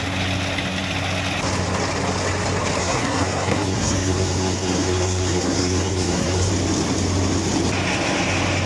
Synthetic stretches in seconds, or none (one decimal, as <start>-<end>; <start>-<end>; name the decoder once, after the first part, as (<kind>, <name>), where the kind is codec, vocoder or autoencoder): 2.8-6.5 (codec, SNAC)